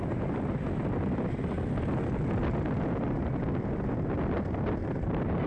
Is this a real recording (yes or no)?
yes